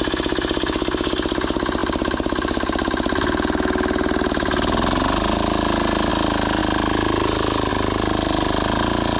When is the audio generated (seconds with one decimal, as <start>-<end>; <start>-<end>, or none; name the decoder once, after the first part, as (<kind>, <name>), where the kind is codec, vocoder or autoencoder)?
none